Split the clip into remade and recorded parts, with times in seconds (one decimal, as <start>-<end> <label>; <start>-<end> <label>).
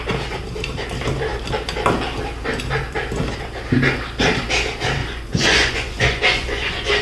0.0-5.0 recorded; 5.0-7.0 remade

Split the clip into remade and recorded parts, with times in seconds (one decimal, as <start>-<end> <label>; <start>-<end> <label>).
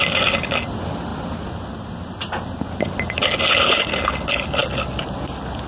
0.0-5.7 recorded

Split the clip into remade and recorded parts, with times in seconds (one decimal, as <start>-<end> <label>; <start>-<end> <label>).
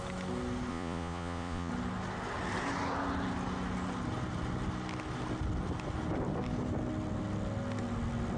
0.0-0.7 recorded; 0.7-1.7 remade; 1.7-8.4 recorded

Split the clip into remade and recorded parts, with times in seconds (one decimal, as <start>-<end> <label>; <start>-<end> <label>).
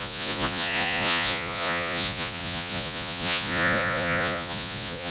0.0-5.1 remade